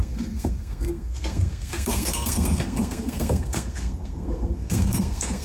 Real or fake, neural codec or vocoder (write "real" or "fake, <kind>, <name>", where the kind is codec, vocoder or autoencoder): fake, codec, SNAC